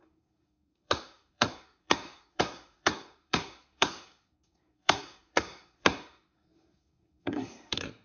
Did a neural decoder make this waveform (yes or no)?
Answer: yes